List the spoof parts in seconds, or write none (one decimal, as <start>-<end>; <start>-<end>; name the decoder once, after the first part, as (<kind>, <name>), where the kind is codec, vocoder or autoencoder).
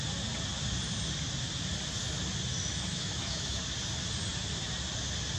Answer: 2.9-3.6 (autoencoder, DAC-VAE)